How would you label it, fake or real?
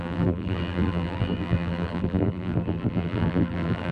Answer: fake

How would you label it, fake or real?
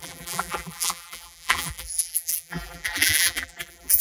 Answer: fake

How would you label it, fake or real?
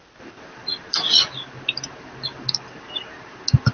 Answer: real